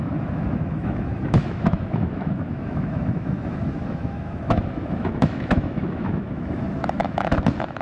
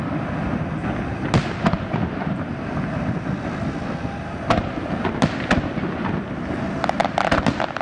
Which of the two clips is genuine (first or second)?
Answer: second